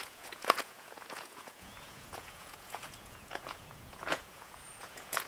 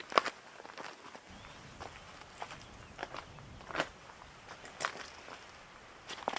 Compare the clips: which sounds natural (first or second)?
second